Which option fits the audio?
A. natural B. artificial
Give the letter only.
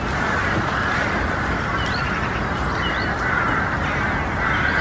A